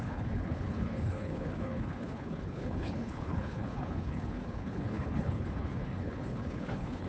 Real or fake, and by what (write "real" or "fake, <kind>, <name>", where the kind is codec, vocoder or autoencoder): fake, codec, HILCodec